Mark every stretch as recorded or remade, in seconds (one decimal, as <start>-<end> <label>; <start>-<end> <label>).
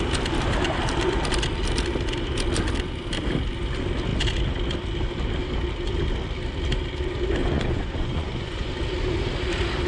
0.0-7.4 recorded; 7.4-8.7 remade; 8.7-9.9 recorded